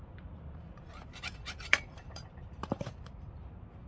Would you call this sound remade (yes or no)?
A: yes